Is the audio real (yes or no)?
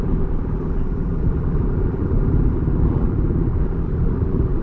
no